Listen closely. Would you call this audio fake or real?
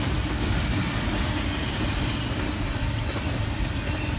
real